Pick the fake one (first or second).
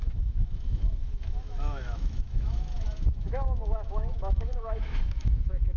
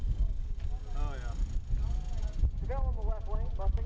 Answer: first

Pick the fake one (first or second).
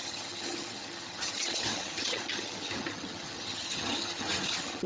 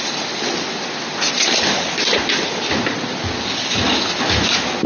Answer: first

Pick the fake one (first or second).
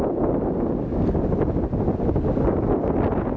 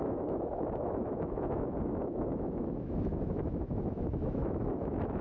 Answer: second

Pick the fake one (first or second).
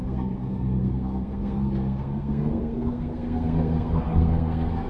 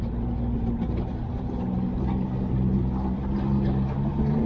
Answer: first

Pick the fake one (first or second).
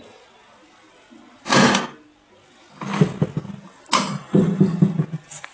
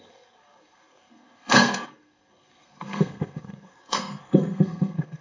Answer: second